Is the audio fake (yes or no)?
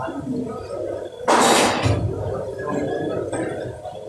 no